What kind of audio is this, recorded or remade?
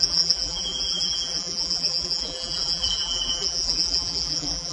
remade